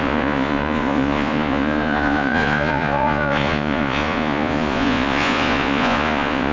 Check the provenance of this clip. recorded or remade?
remade